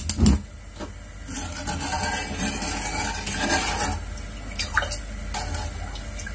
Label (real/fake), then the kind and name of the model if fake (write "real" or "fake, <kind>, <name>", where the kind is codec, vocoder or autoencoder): real